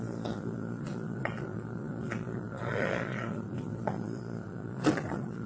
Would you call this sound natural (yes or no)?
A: no